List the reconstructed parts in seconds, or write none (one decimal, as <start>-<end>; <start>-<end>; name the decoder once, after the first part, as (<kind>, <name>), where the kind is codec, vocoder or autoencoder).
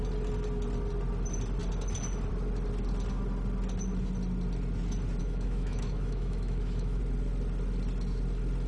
5.2-7.0 (autoencoder, DAC-VAE)